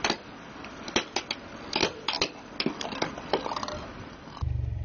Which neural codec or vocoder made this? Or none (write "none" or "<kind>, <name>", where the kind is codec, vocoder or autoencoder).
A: none